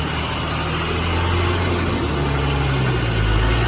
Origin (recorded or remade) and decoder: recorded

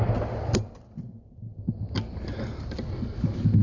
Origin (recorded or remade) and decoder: recorded